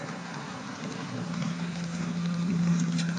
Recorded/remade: remade